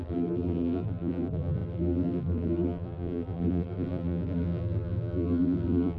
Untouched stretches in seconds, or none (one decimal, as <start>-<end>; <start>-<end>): none